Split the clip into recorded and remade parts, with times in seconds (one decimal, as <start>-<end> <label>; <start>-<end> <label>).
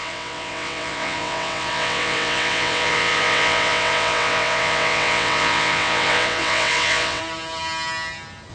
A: 0.0-7.2 remade; 7.2-8.5 recorded